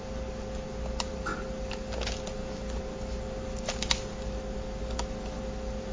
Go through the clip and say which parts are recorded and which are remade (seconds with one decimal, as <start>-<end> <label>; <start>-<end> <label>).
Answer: 0.0-5.9 recorded